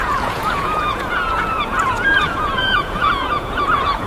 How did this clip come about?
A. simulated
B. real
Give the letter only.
A